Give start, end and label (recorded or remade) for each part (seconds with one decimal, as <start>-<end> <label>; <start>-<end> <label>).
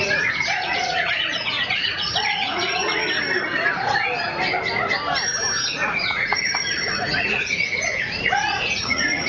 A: 0.0-3.0 remade; 3.0-5.7 recorded; 5.7-9.3 remade